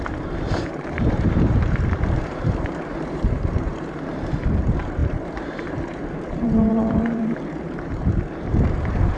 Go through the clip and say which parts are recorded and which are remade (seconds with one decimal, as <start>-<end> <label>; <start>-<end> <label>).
0.0-9.2 remade